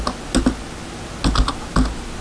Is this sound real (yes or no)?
yes